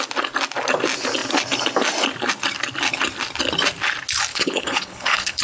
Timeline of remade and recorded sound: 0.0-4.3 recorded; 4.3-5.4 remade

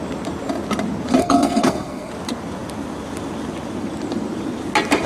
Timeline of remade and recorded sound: 0.0-1.2 recorded; 1.2-2.1 remade; 2.1-5.1 recorded

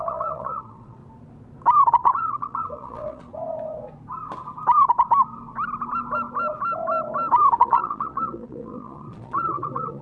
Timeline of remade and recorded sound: 0.0-1.0 remade; 1.0-1.9 recorded; 1.9-3.3 remade; 3.3-7.6 recorded; 7.6-10.0 remade

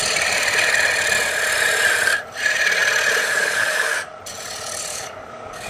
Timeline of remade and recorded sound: 0.0-3.2 recorded; 3.2-4.2 remade; 4.2-4.9 recorded; 4.9-5.7 remade